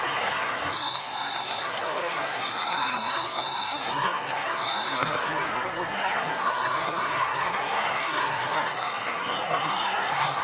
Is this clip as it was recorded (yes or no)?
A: no